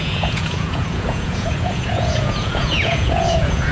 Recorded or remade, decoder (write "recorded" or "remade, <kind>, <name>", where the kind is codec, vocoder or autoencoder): remade, vocoder, Vocos